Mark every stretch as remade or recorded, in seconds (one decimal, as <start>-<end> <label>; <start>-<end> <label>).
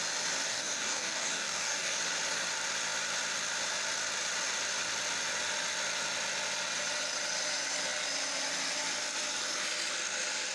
0.0-0.5 recorded; 0.5-2.0 remade; 2.0-10.5 recorded